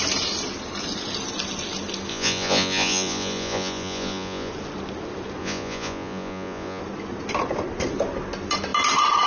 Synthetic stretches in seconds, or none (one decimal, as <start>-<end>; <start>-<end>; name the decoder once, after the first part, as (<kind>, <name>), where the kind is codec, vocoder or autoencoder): 2.1-4.5 (vocoder, Vocos); 5.4-6.8